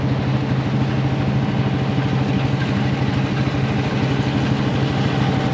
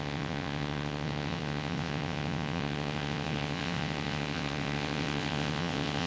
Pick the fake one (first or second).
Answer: second